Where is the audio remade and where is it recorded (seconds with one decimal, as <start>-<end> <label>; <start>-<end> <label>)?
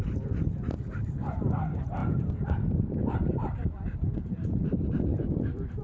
0.0-5.8 remade